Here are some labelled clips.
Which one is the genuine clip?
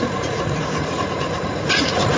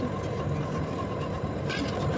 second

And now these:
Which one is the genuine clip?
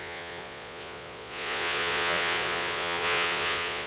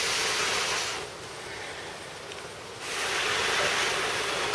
second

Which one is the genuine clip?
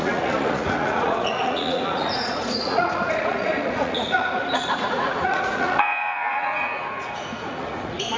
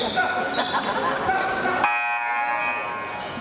second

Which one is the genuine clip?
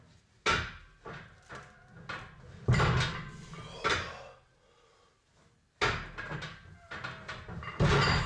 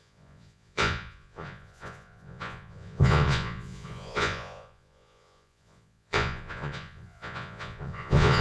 first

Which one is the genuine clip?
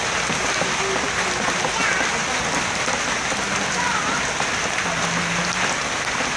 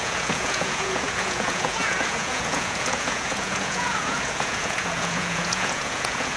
first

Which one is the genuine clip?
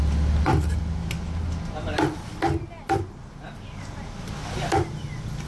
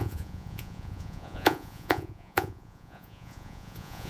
first